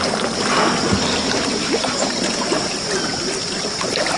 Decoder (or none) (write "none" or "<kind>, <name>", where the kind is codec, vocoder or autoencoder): none